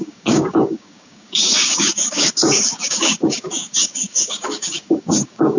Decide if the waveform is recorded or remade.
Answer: remade